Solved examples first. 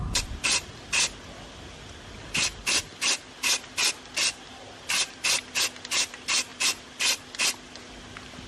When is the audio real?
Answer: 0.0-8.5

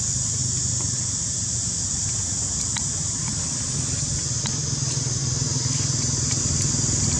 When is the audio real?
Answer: 0.0-7.2

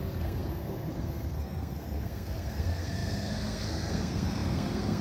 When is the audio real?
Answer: none

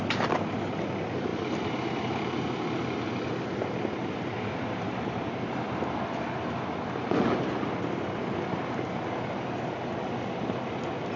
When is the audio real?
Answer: 0.0-11.2

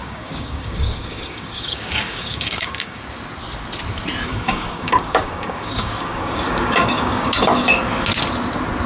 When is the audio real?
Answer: 3.0-4.3; 7.8-8.9

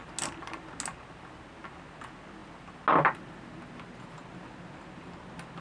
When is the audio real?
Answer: 0.0-5.6

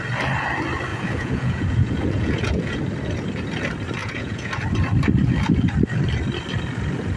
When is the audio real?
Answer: 0.0-0.9; 2.8-4.0; 4.5-7.2

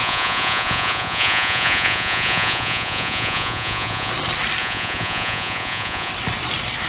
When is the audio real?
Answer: 4.1-4.6; 6.1-6.9